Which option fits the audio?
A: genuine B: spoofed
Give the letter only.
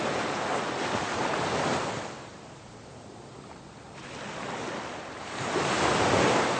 A